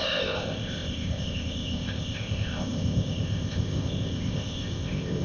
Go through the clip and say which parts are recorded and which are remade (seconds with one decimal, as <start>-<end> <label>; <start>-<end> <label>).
0.0-5.2 remade